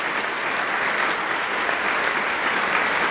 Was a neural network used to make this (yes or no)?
no